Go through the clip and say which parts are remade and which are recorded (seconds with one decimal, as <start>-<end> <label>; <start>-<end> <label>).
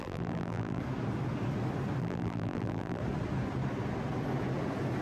0.0-0.8 remade; 0.8-2.0 recorded; 2.0-3.0 remade; 3.0-5.0 recorded